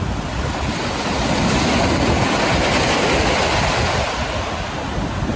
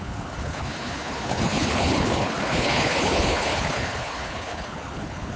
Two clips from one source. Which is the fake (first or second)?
second